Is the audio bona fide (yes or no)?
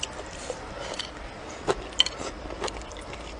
yes